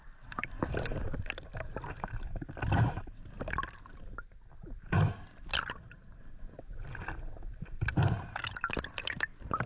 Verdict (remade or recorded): recorded